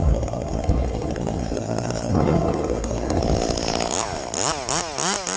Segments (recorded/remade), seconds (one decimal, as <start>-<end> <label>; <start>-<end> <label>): 0.0-3.2 remade; 3.2-5.4 recorded